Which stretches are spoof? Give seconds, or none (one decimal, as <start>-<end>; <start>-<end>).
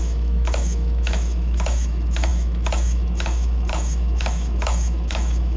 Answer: 0.0-5.6